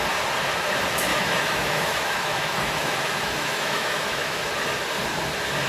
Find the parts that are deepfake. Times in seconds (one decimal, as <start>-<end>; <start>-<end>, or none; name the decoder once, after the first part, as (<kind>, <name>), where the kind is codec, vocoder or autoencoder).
1.1-4.5 (autoencoder, DAC-VAE)